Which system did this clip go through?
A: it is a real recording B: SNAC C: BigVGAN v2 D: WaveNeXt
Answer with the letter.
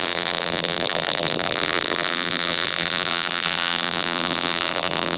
C